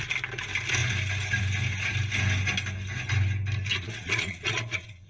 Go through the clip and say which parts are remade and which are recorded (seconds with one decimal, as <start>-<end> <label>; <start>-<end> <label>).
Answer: 0.0-3.7 recorded; 3.7-5.1 remade